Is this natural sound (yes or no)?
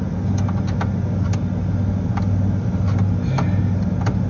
yes